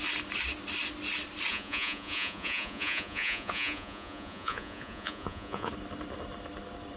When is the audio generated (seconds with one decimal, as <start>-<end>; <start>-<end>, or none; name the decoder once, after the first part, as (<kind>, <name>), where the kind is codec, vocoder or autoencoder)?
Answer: 1.5-5.7 (vocoder, Vocos)